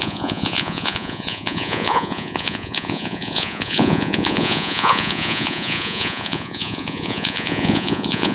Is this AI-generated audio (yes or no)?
yes